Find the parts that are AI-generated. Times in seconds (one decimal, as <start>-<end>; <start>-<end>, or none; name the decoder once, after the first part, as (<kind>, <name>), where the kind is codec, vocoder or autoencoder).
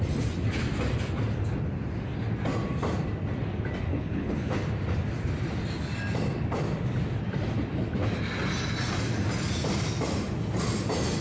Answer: 3.9-4.5 (codec, HILCodec)